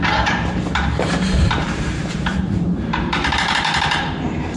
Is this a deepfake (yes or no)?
yes